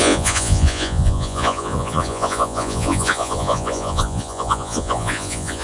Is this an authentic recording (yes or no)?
no